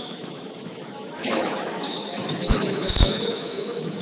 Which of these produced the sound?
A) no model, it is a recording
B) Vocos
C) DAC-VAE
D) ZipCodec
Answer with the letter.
C